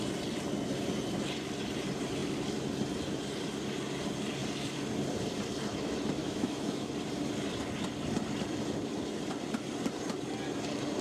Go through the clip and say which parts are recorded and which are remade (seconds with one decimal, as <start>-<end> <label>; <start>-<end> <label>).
0.0-6.2 recorded; 6.2-6.9 remade; 6.9-11.0 recorded